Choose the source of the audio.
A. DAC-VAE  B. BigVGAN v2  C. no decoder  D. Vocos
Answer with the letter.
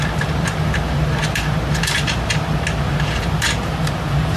B